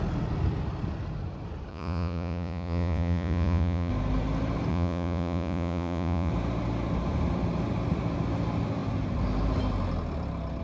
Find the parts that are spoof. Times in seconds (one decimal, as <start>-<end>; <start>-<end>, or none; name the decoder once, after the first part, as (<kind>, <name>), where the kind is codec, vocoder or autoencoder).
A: 1.7-3.9 (vocoder, Vocos); 4.7-6.3